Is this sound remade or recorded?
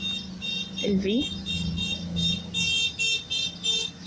recorded